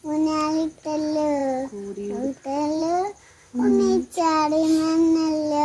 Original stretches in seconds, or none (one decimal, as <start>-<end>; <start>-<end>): 0.0-3.2; 3.7-5.6